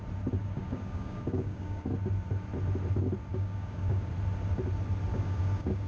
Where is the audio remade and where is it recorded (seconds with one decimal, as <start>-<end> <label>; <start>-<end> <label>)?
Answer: 0.0-0.4 recorded; 0.4-1.8 remade; 1.8-3.3 recorded; 3.3-4.1 remade; 4.1-5.1 recorded; 5.1-5.9 remade